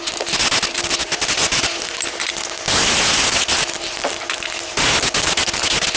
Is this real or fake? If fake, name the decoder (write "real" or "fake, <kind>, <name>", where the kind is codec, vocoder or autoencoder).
real